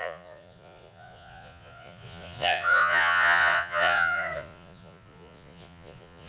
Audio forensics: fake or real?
fake